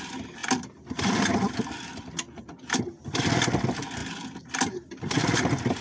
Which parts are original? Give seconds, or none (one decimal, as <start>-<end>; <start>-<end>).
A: 0.0-0.4; 2.0-5.8